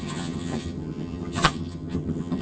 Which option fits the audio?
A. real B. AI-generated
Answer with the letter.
B